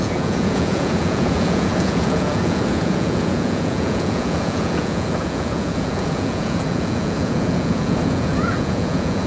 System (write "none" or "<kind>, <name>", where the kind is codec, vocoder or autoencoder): vocoder, Vocos